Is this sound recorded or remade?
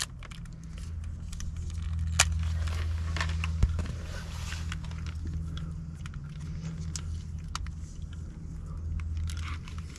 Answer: recorded